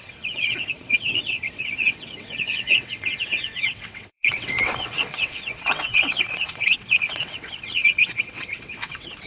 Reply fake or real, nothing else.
fake